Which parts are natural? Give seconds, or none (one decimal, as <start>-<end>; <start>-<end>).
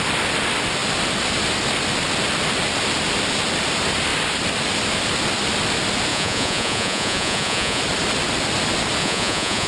0.0-6.1; 7.8-9.0